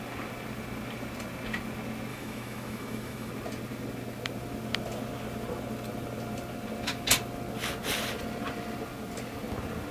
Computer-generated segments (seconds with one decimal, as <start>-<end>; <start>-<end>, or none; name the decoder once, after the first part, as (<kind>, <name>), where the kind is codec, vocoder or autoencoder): 2.1-3.3 (autoencoder, DAC-VAE)